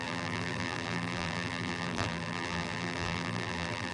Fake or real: fake